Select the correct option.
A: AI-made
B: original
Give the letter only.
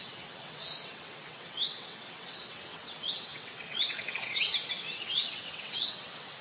A